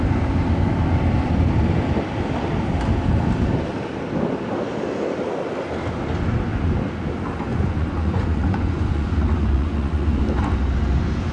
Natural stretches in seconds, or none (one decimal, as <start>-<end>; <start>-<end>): 0.0-7.5; 10.2-11.3